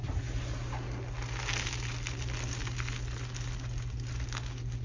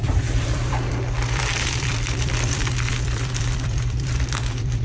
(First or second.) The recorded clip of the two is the first